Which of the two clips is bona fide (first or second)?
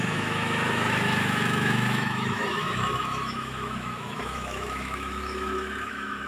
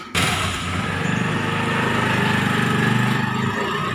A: second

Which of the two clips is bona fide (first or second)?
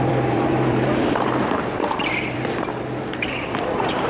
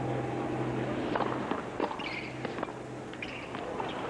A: second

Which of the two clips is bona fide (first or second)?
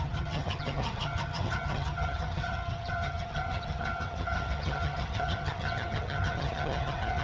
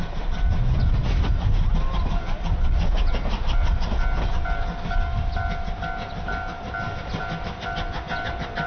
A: second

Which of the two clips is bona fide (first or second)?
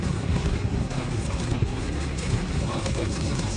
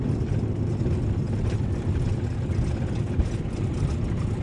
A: second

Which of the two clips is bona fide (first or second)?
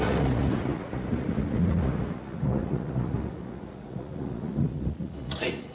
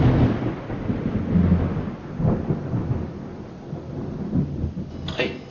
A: second